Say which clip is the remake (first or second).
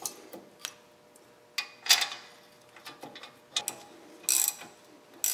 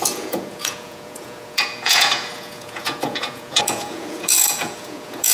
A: second